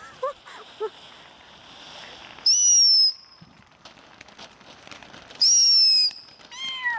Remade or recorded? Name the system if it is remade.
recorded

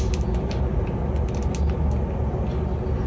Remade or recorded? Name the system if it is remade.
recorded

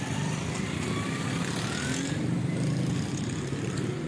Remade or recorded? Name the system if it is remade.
recorded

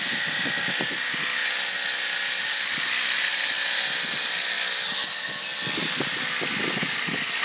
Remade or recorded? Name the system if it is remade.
recorded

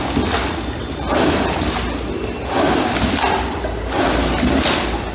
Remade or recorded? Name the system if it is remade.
recorded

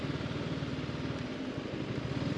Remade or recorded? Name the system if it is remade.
recorded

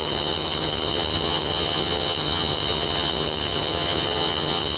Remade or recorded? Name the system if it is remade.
remade, vocoder, HiFi-GAN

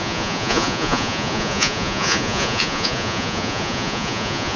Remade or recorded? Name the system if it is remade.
remade, vocoder, Vocos